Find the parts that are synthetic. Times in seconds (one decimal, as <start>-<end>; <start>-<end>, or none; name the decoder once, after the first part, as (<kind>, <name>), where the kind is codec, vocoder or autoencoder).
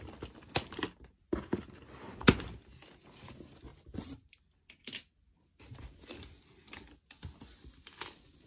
none